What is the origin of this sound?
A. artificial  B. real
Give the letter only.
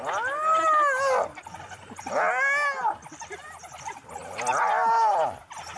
B